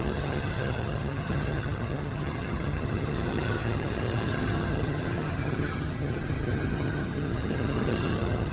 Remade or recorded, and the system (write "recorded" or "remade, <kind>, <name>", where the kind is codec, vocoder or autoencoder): remade, vocoder, HiFi-GAN